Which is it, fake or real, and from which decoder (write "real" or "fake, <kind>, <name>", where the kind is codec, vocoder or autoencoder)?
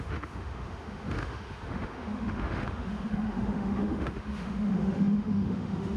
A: fake, autoencoder, DAC-VAE